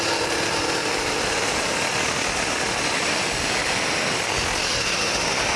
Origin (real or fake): real